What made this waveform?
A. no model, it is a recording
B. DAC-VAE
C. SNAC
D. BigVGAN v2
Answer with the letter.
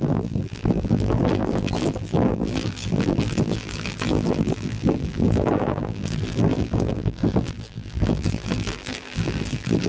D